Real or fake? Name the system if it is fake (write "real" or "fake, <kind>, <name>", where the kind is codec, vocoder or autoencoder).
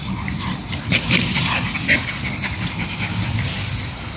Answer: fake, vocoder, BigVGAN v2